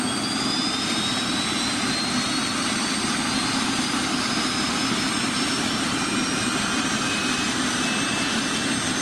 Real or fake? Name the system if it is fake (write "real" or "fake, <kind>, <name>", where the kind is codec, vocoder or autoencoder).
real